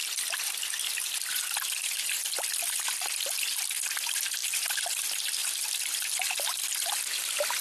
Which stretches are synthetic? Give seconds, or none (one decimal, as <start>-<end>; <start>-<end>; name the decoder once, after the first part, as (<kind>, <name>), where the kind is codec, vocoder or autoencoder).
0.0-3.1 (vocoder, BigVGAN v2); 4.4-5.0; 5.4-6.1